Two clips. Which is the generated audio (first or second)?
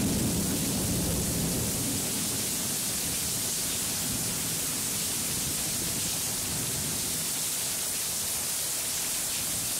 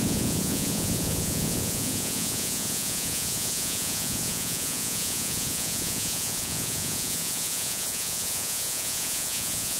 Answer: second